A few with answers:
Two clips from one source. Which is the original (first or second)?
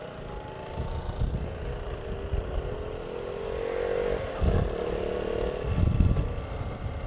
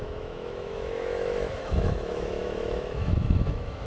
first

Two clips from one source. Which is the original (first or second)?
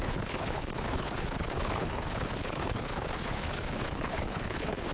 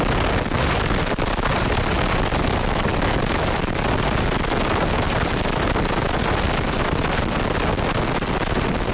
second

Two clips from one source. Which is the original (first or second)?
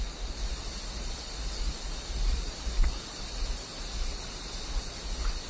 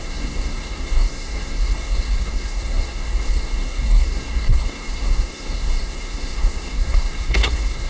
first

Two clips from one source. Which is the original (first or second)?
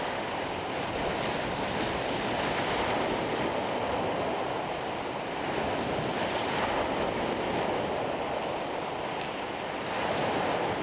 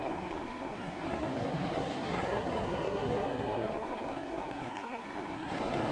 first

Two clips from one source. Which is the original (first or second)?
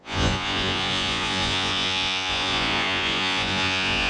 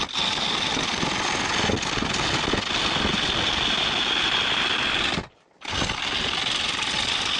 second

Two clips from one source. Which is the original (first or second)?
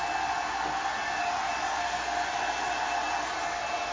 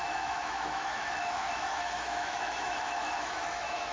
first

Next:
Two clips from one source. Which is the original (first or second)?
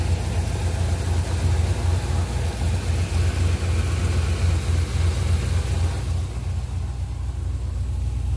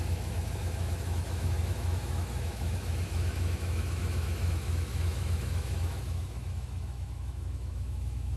first